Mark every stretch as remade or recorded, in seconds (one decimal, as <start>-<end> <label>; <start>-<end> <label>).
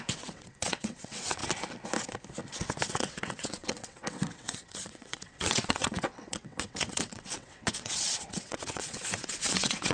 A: 0.0-1.4 remade; 1.4-2.9 recorded; 2.9-9.9 remade